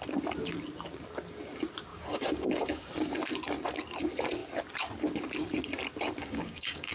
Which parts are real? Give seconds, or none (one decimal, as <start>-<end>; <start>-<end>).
0.0-1.9; 2.9-6.2